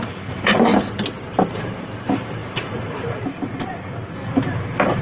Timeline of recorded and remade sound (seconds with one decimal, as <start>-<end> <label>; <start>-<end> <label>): 0.0-0.7 remade; 0.7-1.3 recorded; 1.3-5.0 remade